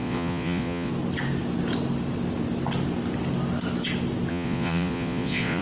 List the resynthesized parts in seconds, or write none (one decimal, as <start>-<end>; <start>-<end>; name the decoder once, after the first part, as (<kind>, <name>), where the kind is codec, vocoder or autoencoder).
0.0-0.9 (vocoder, Vocos); 4.3-5.6